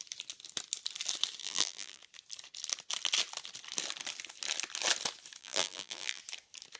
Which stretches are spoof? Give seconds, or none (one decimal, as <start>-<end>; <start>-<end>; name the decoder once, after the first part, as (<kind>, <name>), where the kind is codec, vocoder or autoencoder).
1.4-2.0 (vocoder, BigVGAN v2); 5.4-6.2